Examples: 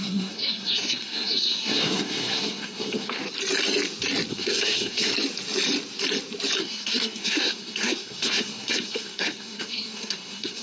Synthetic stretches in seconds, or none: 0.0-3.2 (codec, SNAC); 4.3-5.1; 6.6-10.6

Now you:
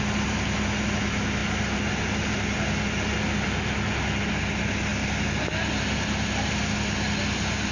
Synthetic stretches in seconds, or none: none

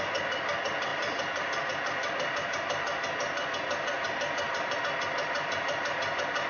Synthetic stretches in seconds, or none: none

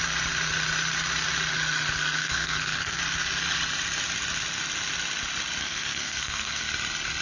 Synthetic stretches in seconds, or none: 2.2-3.0 (codec, SNAC); 5.6-6.6

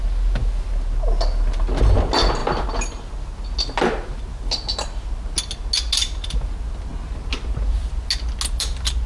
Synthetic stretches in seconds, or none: none

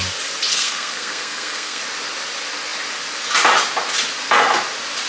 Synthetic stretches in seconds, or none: 0.5-1.8 (codec, SNAC)

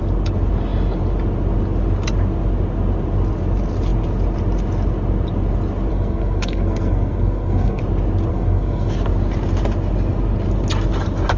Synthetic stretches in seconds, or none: 5.9-7.8 (codec, SNAC); 8.3-8.9

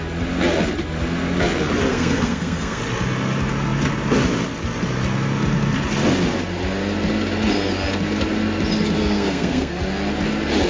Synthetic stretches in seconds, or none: 1.9-2.8 (codec, SNAC); 9.0-9.8